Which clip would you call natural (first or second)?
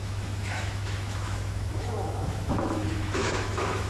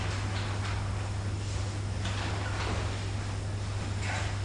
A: second